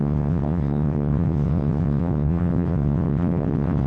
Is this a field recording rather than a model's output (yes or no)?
no